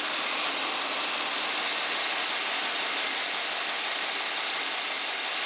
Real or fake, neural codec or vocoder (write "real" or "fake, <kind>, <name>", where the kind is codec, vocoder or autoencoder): real